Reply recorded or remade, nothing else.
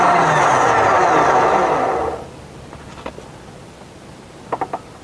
recorded